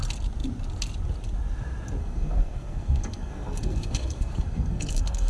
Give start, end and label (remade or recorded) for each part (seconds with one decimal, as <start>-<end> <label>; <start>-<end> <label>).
0.0-2.0 recorded; 2.0-5.3 remade